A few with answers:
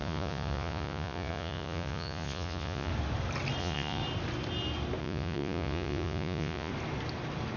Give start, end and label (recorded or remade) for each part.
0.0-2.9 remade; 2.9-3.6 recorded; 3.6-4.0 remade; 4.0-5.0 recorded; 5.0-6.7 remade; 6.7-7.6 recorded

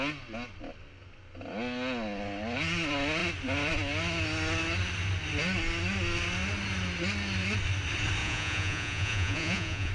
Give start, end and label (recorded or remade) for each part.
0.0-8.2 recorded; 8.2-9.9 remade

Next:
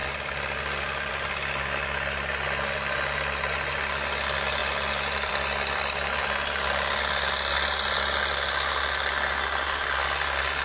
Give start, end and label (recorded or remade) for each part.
0.0-10.6 recorded

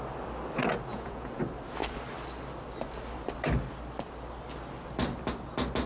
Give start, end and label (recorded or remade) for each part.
0.0-0.9 recorded; 0.9-1.4 remade; 1.4-5.9 recorded